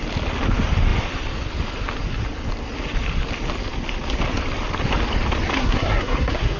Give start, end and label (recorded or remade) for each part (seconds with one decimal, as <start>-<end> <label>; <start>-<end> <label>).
0.0-5.5 recorded; 5.5-6.6 remade

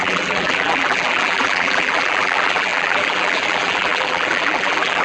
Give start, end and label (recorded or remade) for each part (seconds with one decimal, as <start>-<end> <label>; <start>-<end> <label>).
0.0-5.0 remade

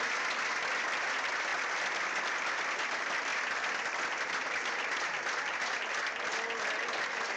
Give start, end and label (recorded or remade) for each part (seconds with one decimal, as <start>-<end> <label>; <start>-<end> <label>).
0.0-7.4 recorded

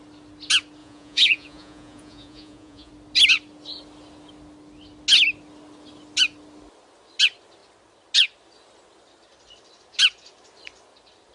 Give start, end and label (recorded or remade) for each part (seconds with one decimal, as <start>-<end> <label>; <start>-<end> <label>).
0.0-0.8 recorded; 0.8-2.9 remade; 2.9-11.3 recorded

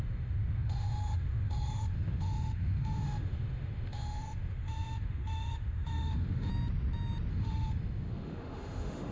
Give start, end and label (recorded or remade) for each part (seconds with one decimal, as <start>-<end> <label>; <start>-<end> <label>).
0.0-6.5 remade; 6.5-7.3 recorded; 7.3-9.1 remade

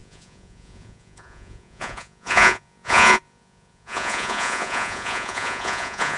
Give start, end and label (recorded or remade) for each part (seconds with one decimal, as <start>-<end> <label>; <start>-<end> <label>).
0.0-6.2 remade